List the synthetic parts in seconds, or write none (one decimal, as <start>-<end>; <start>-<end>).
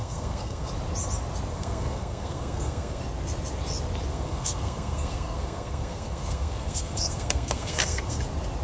0.0-0.7; 1.5-3.0; 4.1-8.2